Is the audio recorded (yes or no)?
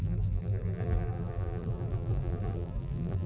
no